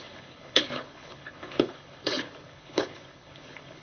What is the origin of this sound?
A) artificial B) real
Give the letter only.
A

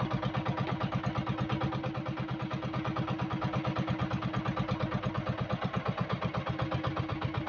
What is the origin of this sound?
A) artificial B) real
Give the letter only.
B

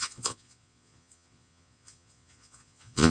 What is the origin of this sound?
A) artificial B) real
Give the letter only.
A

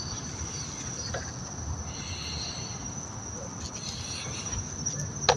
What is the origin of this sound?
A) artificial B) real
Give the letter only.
B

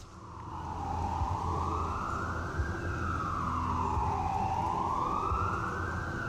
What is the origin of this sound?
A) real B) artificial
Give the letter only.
A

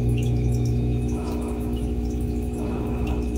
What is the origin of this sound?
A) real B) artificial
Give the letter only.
B